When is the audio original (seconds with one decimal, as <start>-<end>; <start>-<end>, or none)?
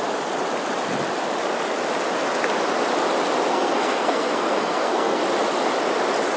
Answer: 0.0-3.5; 5.2-6.4